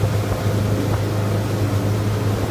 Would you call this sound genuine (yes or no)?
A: yes